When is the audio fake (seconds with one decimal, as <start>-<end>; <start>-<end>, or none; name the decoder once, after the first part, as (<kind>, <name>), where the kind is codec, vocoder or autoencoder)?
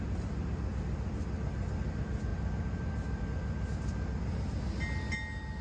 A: none